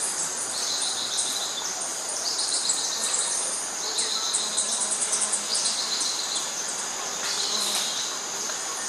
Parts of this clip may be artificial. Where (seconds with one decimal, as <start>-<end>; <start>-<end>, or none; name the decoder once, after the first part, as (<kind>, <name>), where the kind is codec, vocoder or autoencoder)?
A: 1.9-2.6 (vocoder, BigVGAN v2); 5.5-6.2